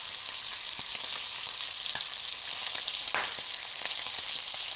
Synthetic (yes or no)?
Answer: no